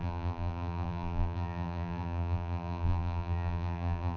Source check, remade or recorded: remade